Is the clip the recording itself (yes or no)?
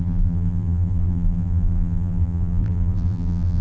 no